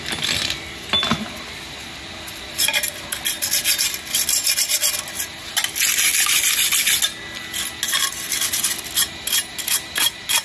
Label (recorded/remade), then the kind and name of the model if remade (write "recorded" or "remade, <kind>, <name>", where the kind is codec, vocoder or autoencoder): recorded